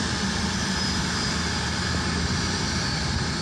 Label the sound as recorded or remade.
remade